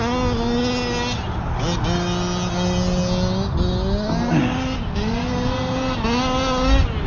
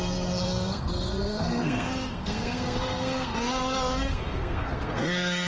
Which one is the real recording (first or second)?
first